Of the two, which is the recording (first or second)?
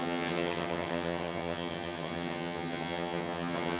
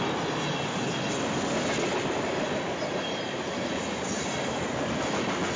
second